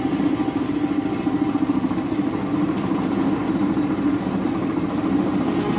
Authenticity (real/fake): real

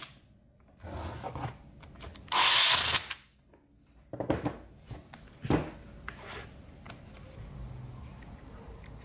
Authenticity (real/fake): real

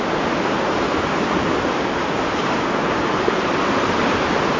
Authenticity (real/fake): fake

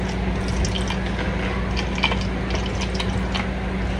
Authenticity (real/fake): real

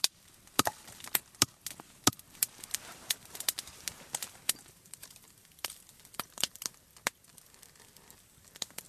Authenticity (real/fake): fake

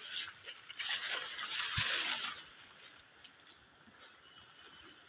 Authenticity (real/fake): real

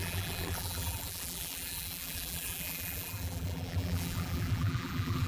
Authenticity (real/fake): fake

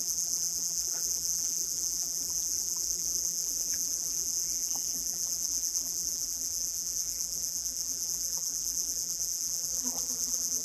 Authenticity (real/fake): fake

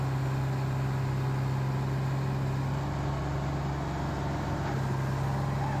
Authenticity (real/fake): real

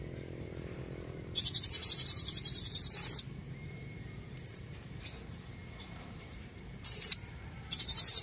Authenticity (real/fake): fake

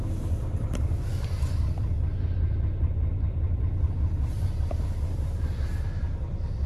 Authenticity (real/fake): fake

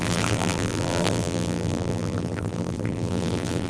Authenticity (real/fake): fake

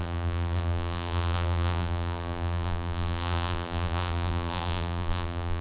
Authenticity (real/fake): fake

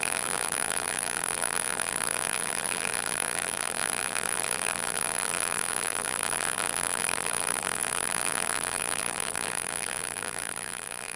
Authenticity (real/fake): fake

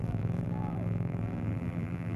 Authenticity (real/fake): fake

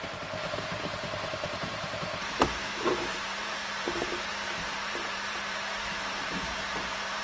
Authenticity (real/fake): fake